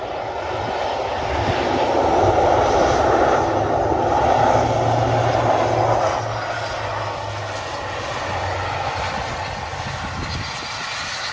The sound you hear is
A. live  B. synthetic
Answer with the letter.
A